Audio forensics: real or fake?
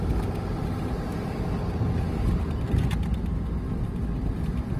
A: real